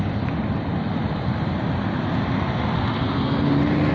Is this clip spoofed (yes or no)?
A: no